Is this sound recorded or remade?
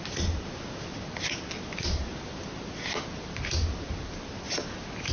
recorded